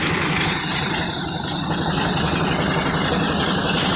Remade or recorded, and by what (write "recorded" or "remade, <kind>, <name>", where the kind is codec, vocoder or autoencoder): remade, vocoder, BigVGAN v2